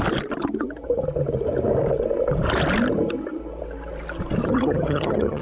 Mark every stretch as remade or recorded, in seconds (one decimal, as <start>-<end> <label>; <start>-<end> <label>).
0.0-4.4 recorded; 4.4-5.4 remade